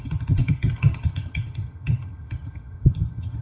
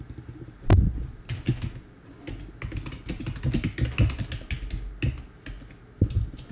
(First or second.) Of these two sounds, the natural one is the second